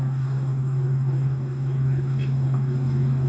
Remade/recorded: remade